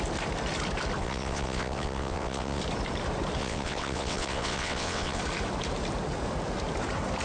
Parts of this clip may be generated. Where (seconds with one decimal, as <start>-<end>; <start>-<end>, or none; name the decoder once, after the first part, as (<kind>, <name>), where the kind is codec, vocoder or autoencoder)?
1.0-2.6 (vocoder, WaveNeXt); 3.4-5.2